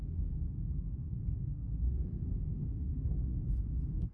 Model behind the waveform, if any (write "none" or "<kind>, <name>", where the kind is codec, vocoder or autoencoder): codec, SNAC